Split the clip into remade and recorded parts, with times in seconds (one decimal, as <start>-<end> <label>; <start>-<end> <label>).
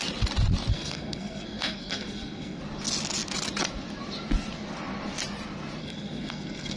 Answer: 0.0-0.7 recorded; 0.7-2.6 remade; 2.6-5.8 recorded; 5.8-6.8 remade